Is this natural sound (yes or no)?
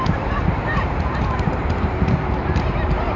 no